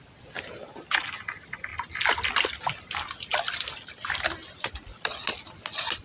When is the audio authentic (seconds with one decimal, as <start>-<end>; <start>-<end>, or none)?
0.0-6.0